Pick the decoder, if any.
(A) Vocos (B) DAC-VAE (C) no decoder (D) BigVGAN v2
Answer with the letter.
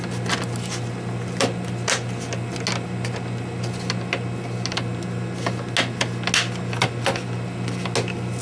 C